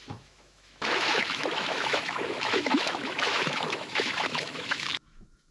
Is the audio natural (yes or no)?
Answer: no